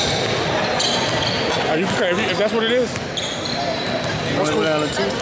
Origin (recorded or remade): recorded